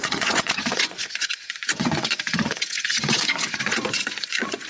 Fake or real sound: fake